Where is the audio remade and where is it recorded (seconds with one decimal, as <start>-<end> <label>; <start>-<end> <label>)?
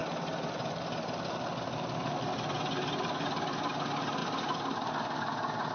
0.0-5.7 recorded